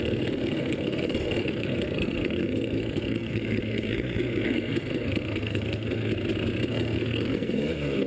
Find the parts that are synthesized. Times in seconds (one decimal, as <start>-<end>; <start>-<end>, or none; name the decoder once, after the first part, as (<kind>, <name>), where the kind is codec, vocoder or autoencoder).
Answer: 0.0-6.1 (codec, SNAC); 6.7-8.1